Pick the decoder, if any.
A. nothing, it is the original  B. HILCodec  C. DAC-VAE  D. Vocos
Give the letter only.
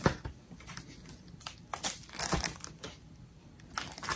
A